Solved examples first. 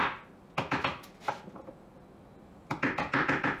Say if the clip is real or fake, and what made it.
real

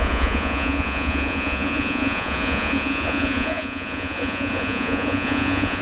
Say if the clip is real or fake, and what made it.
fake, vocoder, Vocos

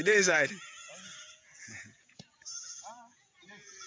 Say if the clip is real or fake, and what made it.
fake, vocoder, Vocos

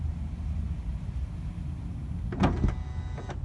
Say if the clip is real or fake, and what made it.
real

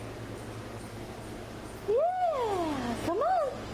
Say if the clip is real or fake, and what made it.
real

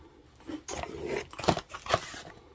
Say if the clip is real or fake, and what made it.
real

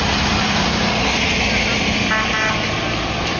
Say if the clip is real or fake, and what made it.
real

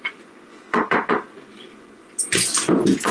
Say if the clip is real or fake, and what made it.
fake, vocoder, Vocos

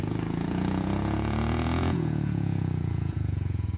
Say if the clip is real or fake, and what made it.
fake, vocoder, Vocos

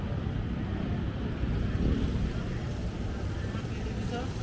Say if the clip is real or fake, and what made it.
real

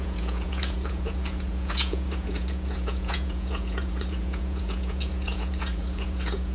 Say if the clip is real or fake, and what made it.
fake, vocoder, Vocos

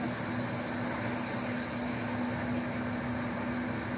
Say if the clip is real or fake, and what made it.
real